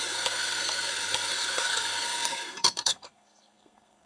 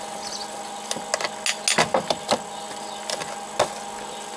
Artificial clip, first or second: first